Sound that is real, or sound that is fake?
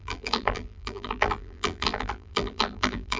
fake